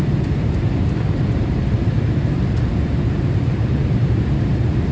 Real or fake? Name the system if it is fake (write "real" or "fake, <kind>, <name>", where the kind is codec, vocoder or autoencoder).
fake, vocoder, BigVGAN v2